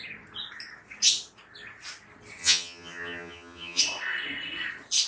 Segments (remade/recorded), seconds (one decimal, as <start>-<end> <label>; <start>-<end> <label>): 0.0-2.4 recorded; 2.4-3.8 remade; 3.8-5.1 recorded